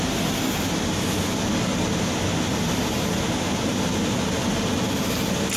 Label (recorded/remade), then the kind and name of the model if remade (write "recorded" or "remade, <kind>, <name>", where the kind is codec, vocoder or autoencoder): recorded